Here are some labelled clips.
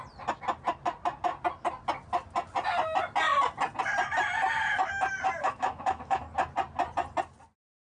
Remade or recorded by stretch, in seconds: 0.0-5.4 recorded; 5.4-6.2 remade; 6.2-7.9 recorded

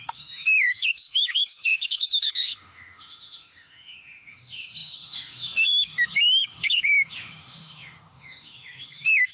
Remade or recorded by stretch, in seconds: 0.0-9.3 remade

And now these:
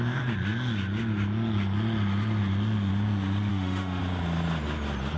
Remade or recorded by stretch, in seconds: 0.0-3.5 recorded; 3.5-4.0 remade; 4.0-5.2 recorded

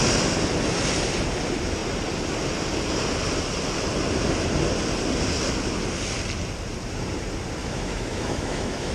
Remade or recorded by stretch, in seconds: 0.0-7.6 recorded; 7.6-8.9 remade